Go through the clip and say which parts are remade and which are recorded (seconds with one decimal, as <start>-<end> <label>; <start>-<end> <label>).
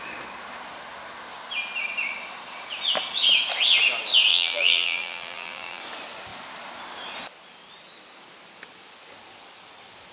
0.0-4.3 recorded; 4.3-5.8 remade; 5.8-10.1 recorded